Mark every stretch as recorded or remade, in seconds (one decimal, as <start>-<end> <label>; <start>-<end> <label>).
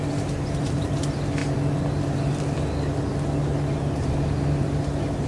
0.0-5.3 recorded